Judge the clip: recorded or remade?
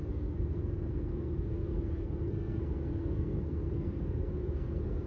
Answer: remade